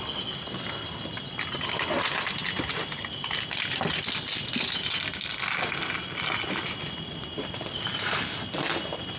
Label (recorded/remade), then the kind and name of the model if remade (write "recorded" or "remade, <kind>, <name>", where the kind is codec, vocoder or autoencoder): recorded